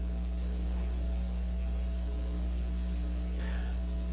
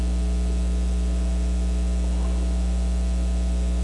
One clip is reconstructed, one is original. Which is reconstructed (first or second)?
first